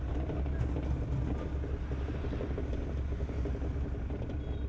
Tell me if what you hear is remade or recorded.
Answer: recorded